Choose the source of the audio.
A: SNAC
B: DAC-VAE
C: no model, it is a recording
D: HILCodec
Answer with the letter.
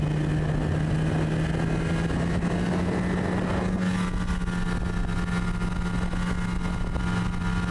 C